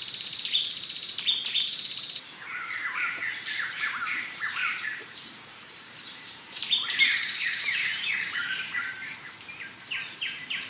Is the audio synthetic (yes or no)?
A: yes